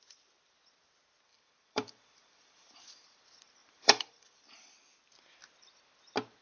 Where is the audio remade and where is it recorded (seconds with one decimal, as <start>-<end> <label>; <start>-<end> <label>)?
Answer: 0.0-1.3 recorded; 1.3-3.2 remade; 3.2-3.6 recorded; 3.6-4.7 remade; 4.7-6.4 recorded